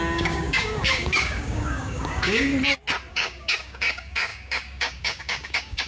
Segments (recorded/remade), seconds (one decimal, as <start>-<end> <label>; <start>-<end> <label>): 0.0-2.5 remade; 2.5-3.1 recorded; 3.1-5.9 remade